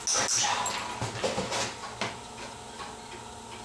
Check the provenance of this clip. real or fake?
real